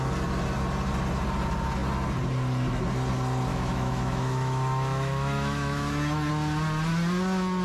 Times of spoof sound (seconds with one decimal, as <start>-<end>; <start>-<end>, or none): 3.5-6.3